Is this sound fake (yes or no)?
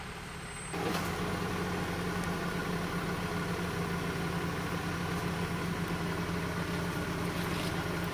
no